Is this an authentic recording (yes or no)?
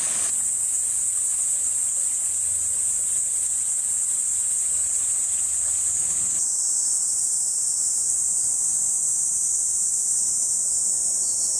yes